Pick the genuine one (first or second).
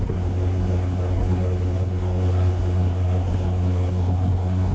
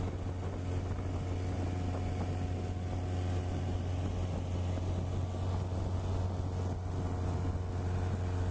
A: second